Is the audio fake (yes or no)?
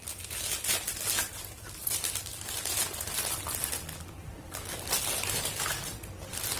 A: no